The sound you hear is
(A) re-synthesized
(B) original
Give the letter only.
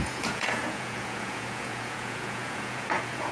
A